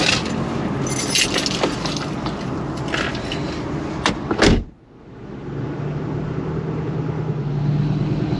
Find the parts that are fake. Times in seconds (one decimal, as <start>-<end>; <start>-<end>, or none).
none